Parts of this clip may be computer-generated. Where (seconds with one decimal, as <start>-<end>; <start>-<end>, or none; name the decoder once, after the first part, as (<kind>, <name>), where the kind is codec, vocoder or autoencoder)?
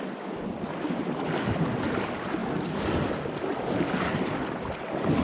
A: none